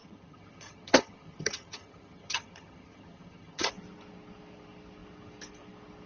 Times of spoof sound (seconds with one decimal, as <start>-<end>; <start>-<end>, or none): 0.0-3.7